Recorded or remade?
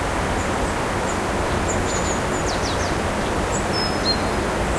recorded